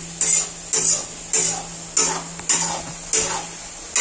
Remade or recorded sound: recorded